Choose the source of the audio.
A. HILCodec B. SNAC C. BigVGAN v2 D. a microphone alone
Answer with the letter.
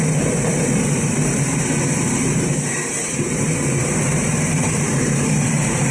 C